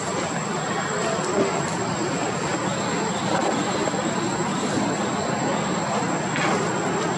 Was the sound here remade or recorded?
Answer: recorded